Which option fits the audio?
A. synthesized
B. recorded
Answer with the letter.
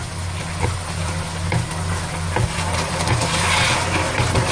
B